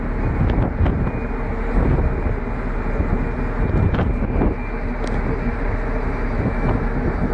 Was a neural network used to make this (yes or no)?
no